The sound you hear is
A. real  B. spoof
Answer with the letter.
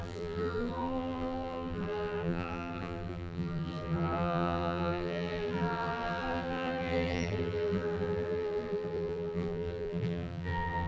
B